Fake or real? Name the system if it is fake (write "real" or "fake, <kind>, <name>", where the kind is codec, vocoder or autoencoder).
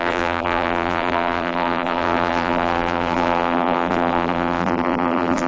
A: fake, vocoder, BigVGAN v2